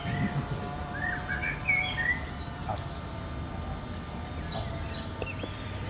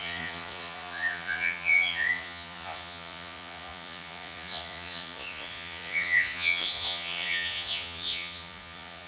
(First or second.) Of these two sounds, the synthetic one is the second